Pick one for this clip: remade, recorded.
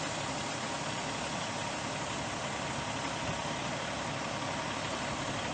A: recorded